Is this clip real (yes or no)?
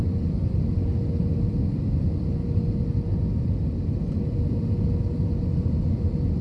yes